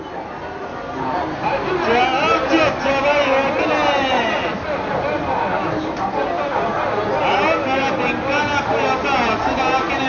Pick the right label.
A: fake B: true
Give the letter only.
B